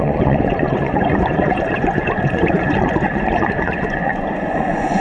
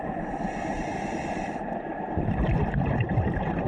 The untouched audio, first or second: second